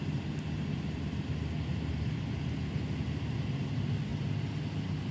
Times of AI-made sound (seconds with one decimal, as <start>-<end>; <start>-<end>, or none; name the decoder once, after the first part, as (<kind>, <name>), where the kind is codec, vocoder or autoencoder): none